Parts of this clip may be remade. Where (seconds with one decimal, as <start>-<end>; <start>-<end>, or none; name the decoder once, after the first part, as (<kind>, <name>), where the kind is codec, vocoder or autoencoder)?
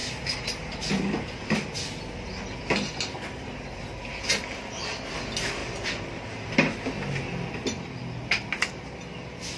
none